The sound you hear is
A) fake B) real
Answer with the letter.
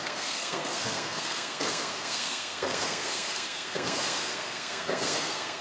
A